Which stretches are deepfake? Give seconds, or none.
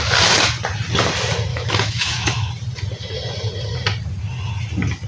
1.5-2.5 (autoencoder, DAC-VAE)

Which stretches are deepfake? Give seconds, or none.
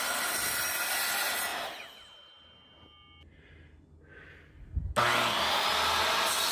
none